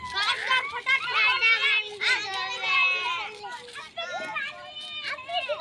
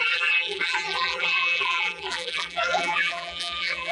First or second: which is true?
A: first